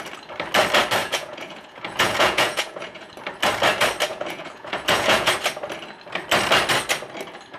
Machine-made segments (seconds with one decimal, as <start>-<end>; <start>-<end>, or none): 1.0-3.1; 4.1-5.3